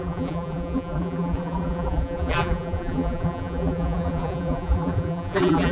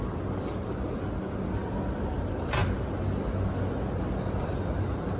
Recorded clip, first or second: second